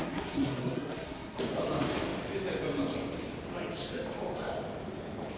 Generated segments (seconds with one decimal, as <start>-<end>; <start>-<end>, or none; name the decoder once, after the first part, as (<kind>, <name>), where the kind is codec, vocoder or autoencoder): 0.0-1.4 (codec, SNAC)